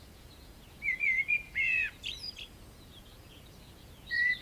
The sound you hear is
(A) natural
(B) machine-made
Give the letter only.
B